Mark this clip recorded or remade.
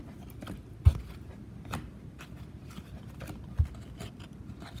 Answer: recorded